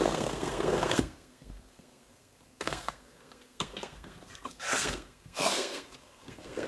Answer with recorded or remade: remade